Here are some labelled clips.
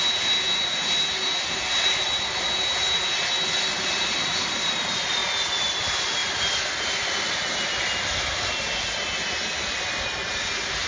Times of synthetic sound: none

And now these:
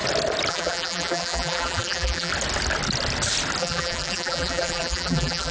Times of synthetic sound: 0.5-2.3; 3.6-5.5

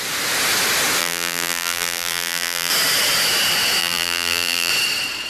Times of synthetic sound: 1.0-2.7; 3.8-4.7

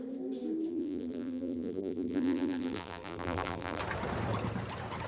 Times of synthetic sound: 0.7-3.8